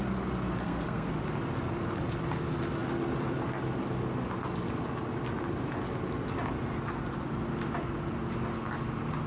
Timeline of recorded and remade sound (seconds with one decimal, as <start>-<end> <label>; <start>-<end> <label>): 0.0-0.6 recorded; 0.6-1.1 remade; 1.1-9.3 recorded